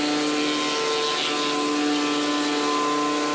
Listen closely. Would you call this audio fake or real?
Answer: real